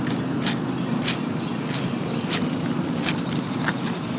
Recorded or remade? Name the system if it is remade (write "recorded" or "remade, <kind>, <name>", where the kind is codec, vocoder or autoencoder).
recorded